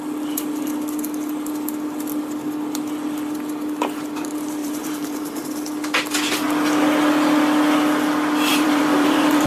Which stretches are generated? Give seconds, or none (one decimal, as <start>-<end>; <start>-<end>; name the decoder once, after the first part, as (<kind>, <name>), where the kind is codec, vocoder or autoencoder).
4.6-5.4 (vocoder, BigVGAN v2); 8.5-9.5